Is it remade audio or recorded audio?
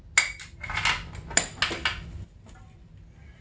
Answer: recorded